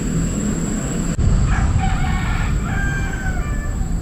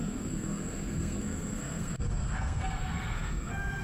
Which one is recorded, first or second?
first